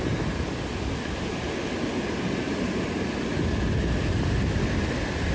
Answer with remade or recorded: recorded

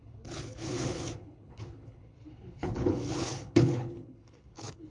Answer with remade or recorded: remade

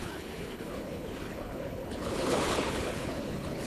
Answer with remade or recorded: remade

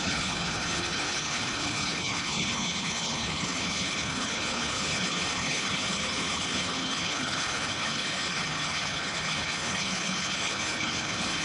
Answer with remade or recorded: remade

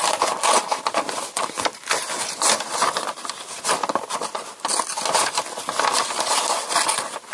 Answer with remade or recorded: recorded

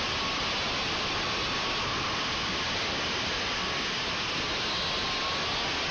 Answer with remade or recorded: recorded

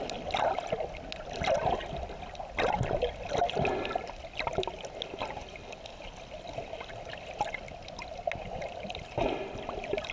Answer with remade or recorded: recorded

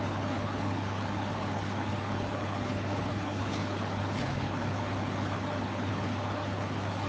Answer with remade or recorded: remade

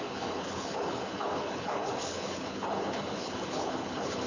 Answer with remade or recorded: remade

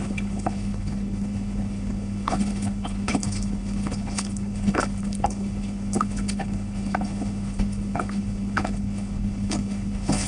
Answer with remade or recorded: remade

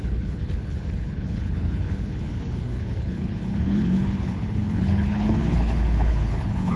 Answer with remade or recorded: remade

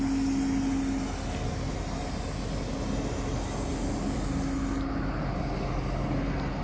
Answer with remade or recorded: recorded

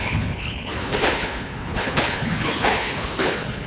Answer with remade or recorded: remade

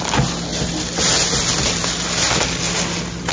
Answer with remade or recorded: recorded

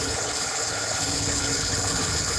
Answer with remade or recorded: remade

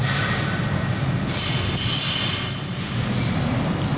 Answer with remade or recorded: recorded